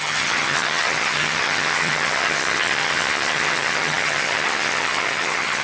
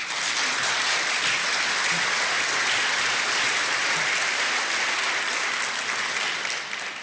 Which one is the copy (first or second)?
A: first